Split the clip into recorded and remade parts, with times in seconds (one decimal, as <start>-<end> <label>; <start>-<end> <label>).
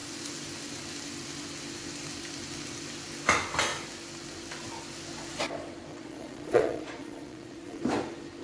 0.0-5.9 recorded; 5.9-7.8 remade; 7.8-8.4 recorded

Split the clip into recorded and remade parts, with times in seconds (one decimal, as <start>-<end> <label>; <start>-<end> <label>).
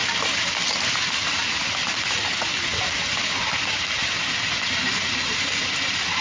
0.0-2.3 remade; 2.3-6.2 recorded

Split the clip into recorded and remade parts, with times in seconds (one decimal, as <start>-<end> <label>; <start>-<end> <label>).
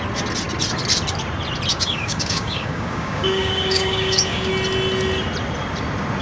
0.0-1.7 recorded; 1.7-4.5 remade; 4.5-6.2 recorded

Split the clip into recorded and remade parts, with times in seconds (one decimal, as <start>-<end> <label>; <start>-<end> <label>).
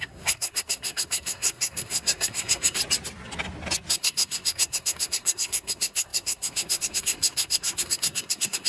0.0-2.8 remade; 2.8-3.9 recorded; 3.9-8.7 remade